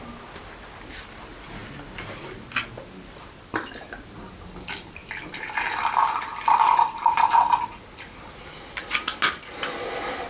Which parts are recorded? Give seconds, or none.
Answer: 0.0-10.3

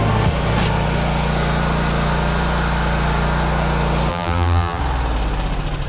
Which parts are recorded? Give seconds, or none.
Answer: 0.0-4.1; 4.8-5.9

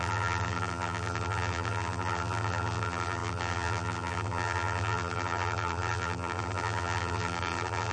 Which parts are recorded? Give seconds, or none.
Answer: none

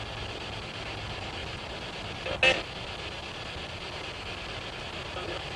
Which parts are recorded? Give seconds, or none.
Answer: 0.0-5.6

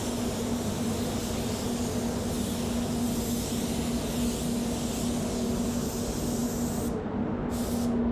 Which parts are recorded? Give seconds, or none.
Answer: 0.0-8.1

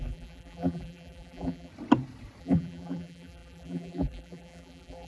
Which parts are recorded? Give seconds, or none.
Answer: 1.7-2.4

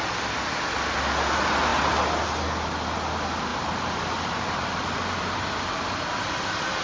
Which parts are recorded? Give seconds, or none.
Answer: 0.0-3.5; 4.0-6.8